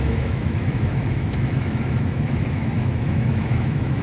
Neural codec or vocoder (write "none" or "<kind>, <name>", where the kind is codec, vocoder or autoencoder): autoencoder, DAC-VAE